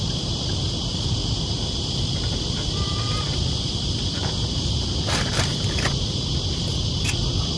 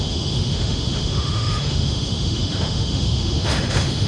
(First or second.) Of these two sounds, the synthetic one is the second